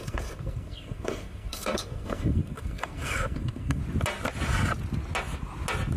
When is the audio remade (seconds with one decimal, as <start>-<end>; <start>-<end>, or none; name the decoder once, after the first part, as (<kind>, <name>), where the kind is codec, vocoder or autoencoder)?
0.0-3.8 (codec, SNAC)

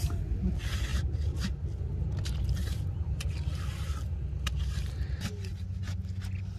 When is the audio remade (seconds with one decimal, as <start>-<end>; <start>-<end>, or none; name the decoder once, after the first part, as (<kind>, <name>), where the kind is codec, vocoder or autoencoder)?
none